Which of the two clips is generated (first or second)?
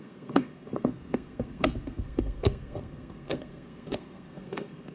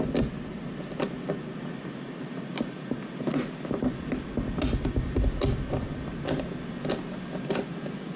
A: first